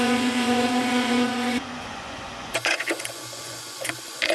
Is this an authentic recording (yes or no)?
no